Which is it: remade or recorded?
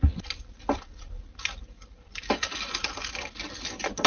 recorded